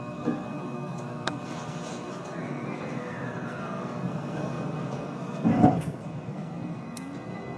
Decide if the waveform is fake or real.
fake